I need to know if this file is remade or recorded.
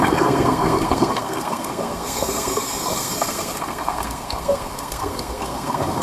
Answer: remade